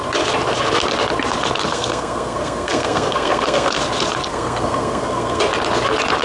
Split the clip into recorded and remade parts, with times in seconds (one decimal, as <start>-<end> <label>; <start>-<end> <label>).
0.0-1.7 recorded; 1.7-3.8 remade; 3.8-4.3 recorded; 4.3-5.4 remade; 5.4-6.2 recorded